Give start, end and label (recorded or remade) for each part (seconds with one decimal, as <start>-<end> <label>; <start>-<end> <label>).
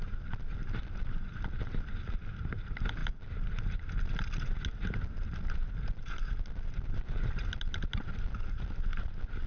0.0-9.5 recorded